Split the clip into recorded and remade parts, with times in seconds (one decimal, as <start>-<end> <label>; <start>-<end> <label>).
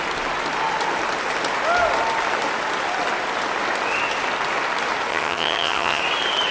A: 0.0-5.1 recorded; 5.1-6.0 remade; 6.0-6.5 recorded